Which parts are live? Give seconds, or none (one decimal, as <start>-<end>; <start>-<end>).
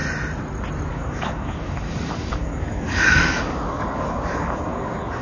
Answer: 0.0-0.9